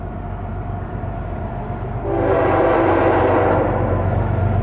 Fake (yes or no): no